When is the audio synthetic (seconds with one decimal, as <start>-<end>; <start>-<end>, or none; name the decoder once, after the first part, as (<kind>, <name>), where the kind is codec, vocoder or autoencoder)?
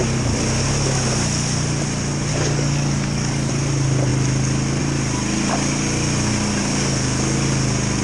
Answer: 2.3-3.5 (codec, DAC)